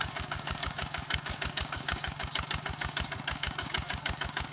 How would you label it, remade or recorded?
remade